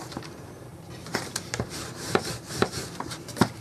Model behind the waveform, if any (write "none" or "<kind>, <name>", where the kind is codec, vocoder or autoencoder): vocoder, BigVGAN v2